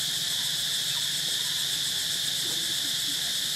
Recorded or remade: recorded